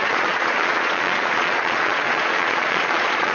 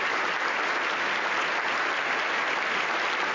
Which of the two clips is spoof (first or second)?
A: first